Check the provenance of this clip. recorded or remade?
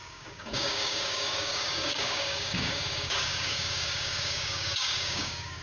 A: remade